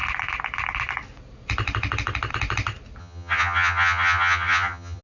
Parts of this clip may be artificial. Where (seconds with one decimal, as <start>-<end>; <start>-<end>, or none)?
3.0-5.0